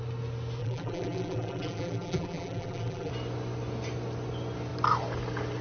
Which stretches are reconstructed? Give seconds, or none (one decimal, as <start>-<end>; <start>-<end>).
0.6-3.1

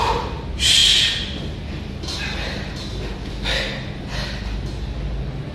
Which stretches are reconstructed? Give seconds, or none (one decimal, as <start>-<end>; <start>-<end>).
none